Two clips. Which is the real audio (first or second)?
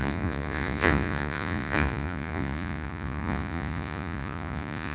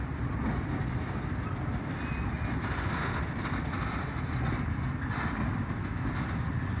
second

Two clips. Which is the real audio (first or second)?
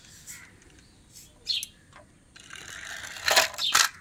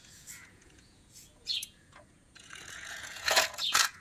first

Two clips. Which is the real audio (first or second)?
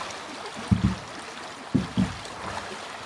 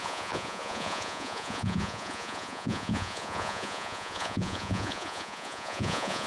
first